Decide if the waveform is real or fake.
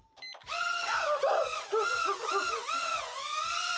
real